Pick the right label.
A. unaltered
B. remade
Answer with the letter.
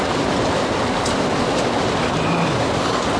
A